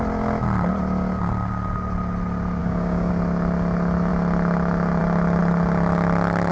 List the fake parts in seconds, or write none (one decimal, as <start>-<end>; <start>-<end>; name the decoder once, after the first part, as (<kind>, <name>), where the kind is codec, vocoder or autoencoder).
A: 2.6-3.1 (codec, DAC)